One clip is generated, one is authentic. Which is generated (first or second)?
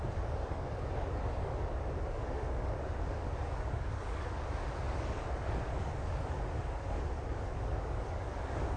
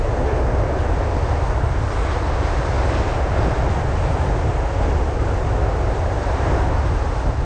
first